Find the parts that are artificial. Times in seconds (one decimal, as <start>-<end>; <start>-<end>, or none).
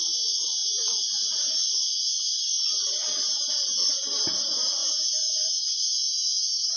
4.8-5.6